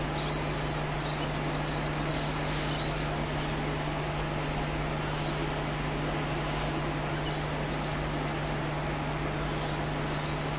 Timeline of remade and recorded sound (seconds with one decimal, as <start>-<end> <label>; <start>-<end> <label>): 0.0-2.1 recorded; 2.1-2.7 remade; 2.7-10.6 recorded